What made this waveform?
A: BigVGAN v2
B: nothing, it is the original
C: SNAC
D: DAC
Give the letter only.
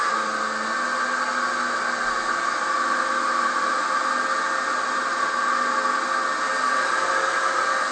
B